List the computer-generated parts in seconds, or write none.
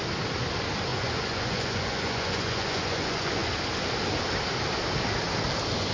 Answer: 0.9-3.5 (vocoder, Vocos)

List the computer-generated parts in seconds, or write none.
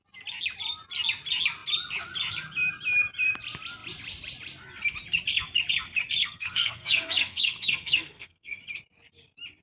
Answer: 6.2-8.6 (codec, SNAC)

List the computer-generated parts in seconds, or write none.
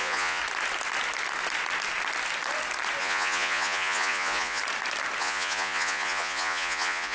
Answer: 0.0-0.4 (vocoder, Vocos); 3.0-4.6; 5.2-7.1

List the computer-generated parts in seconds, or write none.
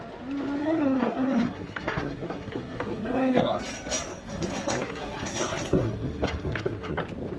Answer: 0.6-3.6 (codec, SNAC); 4.1-7.0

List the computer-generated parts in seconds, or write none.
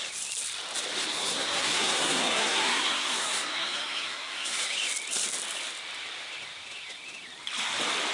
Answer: 1.1-4.6 (codec, SNAC)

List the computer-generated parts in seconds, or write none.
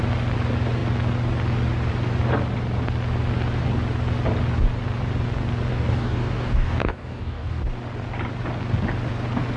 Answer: 5.7-7.6 (codec, DAC)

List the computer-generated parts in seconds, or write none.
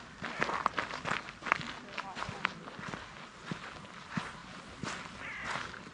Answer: none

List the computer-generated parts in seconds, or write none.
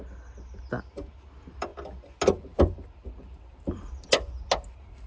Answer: none